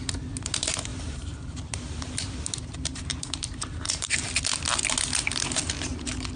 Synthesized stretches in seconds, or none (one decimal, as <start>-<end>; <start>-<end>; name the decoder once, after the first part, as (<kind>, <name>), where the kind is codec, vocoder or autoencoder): 0.9-4.3 (vocoder, BigVGAN v2)

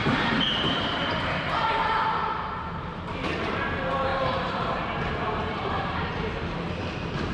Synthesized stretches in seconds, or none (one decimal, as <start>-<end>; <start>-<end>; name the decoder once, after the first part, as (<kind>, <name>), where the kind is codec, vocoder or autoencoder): 0.0-3.6 (vocoder, BigVGAN v2); 4.1-6.1

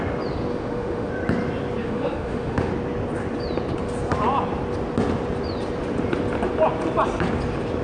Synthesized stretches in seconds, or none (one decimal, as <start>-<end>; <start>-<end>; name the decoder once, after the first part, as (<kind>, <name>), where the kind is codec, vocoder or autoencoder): 0.5-1.1 (autoencoder, DAC-VAE); 1.8-2.7

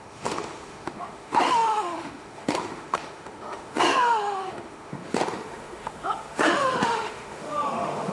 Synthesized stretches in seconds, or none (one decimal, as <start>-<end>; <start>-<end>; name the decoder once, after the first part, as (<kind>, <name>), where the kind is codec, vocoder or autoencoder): 0.0-8.1 (autoencoder, DAC-VAE)